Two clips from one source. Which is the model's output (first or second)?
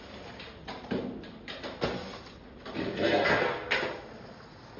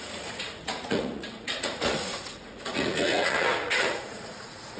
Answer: second